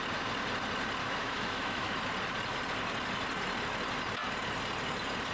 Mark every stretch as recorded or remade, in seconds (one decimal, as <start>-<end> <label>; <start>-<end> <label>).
0.0-1.0 recorded; 1.0-1.9 remade; 1.9-5.3 recorded